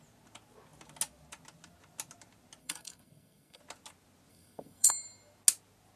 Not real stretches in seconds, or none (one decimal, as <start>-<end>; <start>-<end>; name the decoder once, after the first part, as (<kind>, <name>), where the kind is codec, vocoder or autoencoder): 2.6-3.6 (codec, SNAC); 4.3-4.9